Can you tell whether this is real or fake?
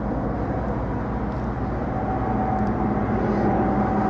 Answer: real